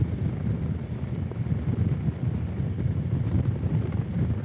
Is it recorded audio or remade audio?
recorded